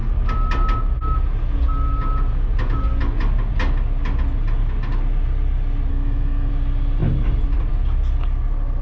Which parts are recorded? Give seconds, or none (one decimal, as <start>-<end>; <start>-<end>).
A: 0.0-5.9; 6.5-8.8